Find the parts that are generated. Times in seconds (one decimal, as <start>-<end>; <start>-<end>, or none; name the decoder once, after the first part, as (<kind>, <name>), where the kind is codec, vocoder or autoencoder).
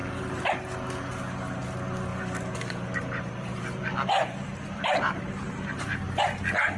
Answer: 0.0-0.5 (vocoder, BigVGAN v2); 2.1-6.2